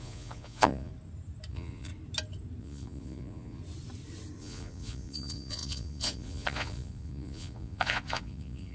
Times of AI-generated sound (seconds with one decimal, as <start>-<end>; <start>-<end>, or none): 0.0-0.9; 1.5-1.9; 2.6-3.6; 4.4-8.7